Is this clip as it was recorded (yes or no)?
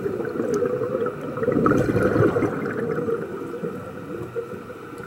yes